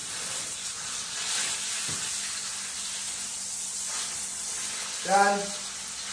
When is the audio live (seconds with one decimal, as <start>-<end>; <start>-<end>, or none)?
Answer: 1.3-6.1